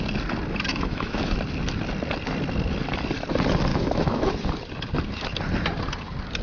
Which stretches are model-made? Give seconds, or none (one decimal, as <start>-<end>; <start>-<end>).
0.7-1.3; 3.7-4.3